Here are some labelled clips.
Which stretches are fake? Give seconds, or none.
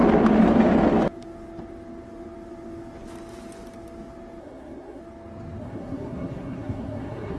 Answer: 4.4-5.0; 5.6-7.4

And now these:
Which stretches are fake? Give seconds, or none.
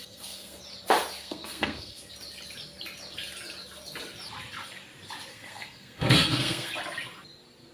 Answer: 0.0-0.6; 1.2-2.1; 5.3-6.7